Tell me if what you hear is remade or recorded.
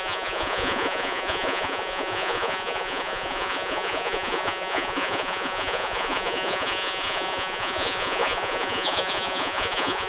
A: remade